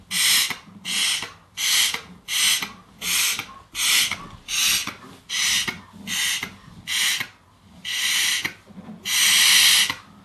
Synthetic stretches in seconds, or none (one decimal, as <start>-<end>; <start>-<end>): none